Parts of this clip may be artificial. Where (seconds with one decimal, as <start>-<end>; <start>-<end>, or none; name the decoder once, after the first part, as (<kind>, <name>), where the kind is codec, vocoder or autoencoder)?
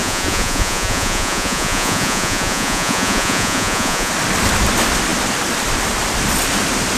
0.0-4.1 (vocoder, Vocos)